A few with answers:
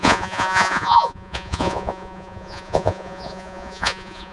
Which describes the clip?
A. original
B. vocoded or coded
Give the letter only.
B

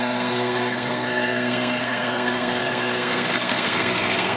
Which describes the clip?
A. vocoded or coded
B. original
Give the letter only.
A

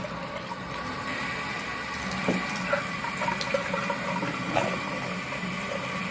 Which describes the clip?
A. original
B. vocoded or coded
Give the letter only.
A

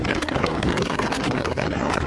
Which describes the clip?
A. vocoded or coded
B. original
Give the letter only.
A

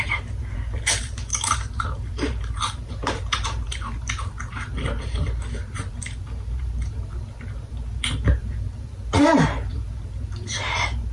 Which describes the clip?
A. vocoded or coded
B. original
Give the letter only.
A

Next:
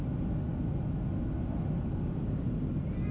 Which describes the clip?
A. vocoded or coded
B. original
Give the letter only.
B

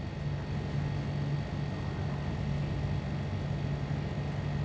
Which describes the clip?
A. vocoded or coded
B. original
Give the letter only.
B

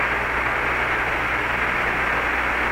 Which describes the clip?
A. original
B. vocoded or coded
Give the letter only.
A